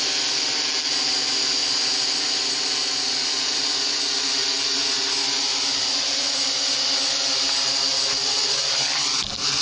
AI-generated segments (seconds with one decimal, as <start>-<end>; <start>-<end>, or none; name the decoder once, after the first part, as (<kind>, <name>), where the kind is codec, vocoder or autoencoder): none